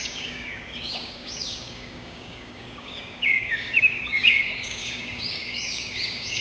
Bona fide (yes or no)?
no